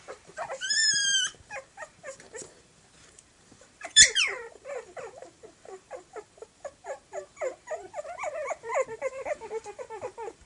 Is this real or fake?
fake